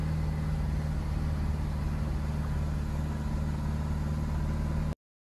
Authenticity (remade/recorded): recorded